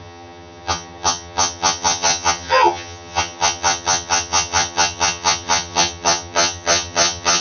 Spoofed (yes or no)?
yes